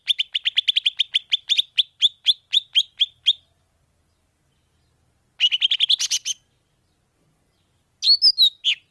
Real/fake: real